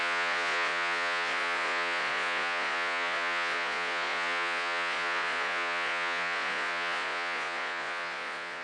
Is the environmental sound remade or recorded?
remade